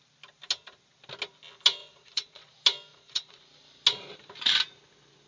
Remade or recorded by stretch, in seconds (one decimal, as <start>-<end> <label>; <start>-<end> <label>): 0.0-1.8 recorded; 1.8-2.5 remade; 2.5-2.9 recorded; 2.9-3.4 remade; 3.4-5.3 recorded